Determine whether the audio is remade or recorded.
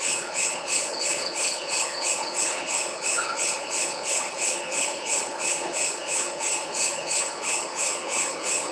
remade